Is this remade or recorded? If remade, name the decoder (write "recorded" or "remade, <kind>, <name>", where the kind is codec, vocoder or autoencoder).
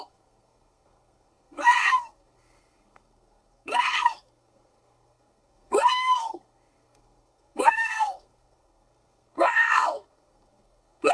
remade, codec, SNAC